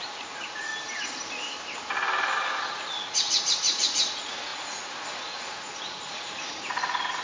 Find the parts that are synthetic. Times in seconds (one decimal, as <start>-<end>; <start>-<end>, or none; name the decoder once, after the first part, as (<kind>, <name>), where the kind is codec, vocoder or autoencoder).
0.0-0.7 (vocoder, Vocos); 3.1-7.2